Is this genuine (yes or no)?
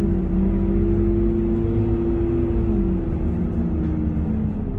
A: yes